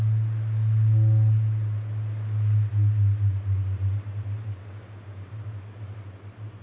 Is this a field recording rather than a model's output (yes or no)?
yes